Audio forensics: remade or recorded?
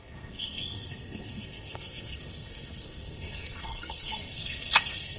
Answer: remade